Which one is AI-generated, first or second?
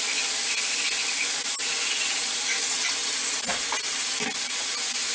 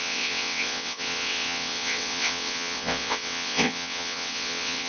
second